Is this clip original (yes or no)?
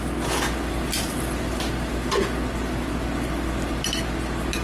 yes